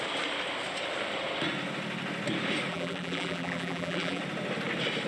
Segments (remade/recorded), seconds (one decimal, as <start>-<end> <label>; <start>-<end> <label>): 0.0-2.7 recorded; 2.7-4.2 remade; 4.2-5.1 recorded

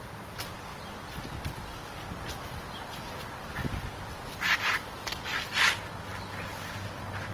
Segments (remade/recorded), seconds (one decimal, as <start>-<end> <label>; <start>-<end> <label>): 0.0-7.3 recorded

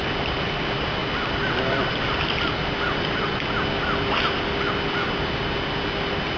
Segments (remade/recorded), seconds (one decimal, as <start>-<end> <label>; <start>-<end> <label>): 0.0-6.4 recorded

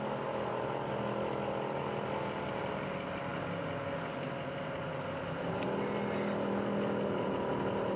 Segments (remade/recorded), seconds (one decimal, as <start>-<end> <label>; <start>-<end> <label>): 0.0-8.0 recorded